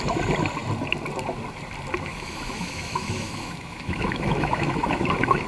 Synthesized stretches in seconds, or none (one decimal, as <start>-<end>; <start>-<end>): 2.1-5.5